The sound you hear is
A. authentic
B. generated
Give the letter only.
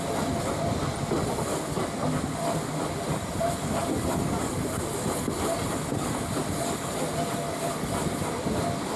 A